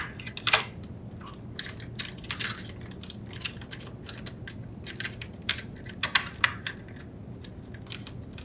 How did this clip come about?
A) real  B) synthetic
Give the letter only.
A